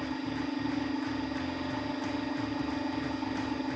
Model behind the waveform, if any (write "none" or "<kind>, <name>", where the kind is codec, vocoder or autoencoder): none